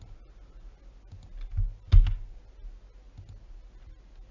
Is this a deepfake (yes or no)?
no